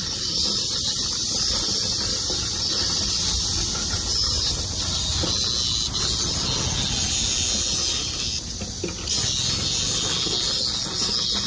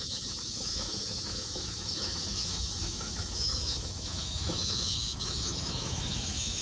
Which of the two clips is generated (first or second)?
second